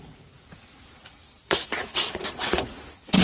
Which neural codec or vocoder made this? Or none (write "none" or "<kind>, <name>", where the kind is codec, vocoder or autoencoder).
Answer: vocoder, Vocos